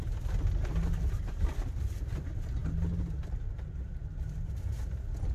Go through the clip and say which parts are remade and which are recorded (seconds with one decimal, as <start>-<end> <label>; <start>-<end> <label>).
0.0-5.3 recorded